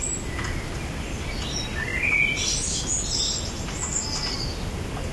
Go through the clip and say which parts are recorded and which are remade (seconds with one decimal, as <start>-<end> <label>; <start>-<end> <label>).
0.0-5.1 recorded